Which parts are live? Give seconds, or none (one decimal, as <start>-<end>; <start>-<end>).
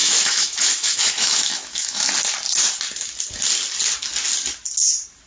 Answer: 2.1-5.3